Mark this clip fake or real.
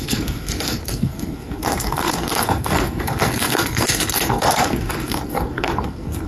fake